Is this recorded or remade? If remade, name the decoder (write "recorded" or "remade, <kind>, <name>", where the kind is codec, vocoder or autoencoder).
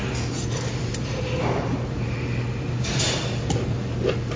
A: recorded